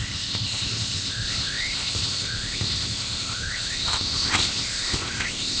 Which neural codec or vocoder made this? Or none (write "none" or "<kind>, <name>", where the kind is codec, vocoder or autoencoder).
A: codec, ZipCodec